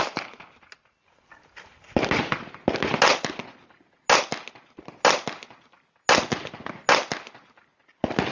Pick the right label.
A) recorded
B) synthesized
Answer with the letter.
A